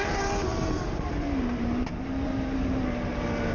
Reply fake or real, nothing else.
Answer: fake